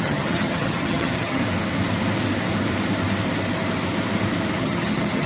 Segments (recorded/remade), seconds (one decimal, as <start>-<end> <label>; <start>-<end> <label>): 0.0-1.4 remade; 1.4-4.6 recorded; 4.6-5.3 remade

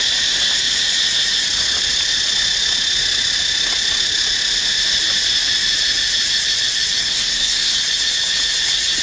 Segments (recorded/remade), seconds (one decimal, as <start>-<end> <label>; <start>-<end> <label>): 0.0-7.0 recorded; 7.0-7.8 remade; 7.8-9.0 recorded

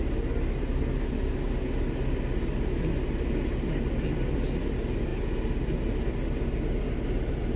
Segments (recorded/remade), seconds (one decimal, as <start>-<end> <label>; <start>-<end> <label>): 0.0-7.6 recorded

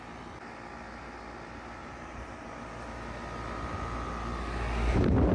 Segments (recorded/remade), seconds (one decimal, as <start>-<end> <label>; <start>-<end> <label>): 0.0-1.8 recorded; 1.8-2.5 remade; 2.5-5.3 recorded